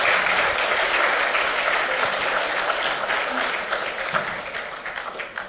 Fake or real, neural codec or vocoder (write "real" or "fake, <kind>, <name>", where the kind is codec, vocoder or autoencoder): real